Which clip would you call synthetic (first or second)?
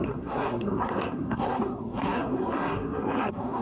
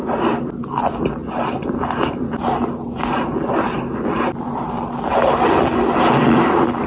first